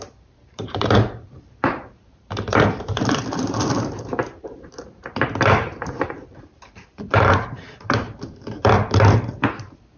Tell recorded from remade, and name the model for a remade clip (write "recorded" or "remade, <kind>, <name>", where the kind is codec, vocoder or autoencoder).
remade, vocoder, BigVGAN v2